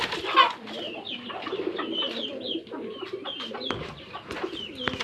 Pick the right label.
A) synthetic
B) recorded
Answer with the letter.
B